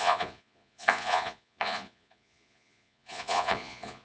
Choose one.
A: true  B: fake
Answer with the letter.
B